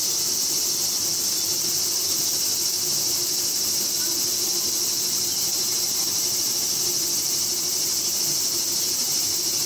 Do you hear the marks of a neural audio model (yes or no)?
no